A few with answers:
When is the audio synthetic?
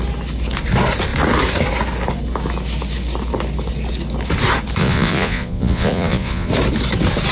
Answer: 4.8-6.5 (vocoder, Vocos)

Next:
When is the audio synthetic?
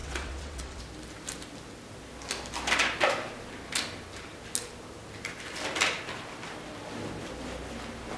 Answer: 0.0-0.8 (vocoder, WaveNeXt)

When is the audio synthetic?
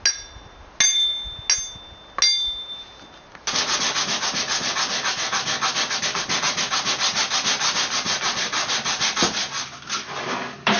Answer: none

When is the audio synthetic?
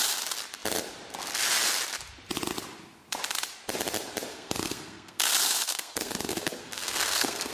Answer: 4.3-7.5 (codec, SNAC)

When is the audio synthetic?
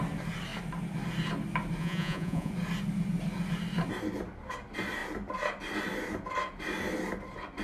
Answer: 1.8-2.5 (vocoder, Vocos)